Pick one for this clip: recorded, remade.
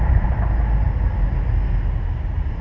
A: recorded